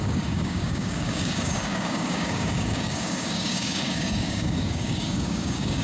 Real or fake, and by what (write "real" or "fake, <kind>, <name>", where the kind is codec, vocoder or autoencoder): fake, codec, DAC